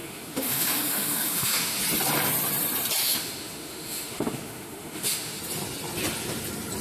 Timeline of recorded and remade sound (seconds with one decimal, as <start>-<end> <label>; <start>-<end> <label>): 0.0-1.8 remade; 1.8-3.0 recorded; 3.0-5.4 remade; 5.4-6.8 recorded